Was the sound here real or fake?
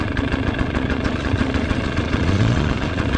fake